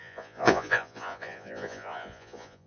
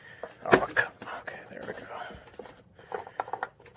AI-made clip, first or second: first